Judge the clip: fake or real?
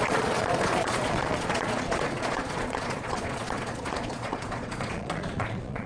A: fake